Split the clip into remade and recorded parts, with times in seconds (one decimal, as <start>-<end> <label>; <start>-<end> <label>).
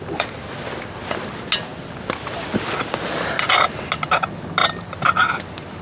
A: 0.0-5.8 recorded